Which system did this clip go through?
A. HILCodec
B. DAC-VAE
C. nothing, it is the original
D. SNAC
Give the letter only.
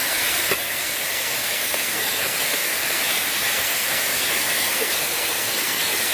D